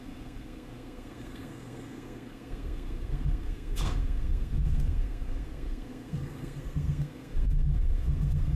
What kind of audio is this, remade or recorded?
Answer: remade